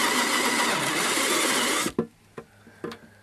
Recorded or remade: recorded